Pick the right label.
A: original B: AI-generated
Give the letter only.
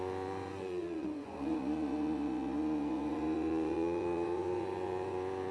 B